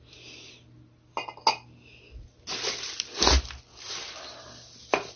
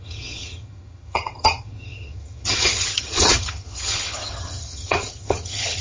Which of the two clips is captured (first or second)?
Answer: first